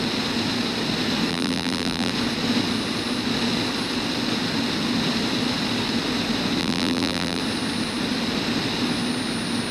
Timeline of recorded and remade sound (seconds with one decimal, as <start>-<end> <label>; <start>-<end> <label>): 0.0-1.3 recorded; 1.3-2.1 remade; 2.1-6.6 recorded; 6.6-7.4 remade; 7.4-9.7 recorded